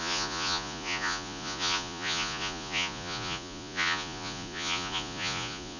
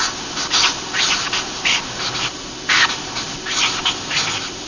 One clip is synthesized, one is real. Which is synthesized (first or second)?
first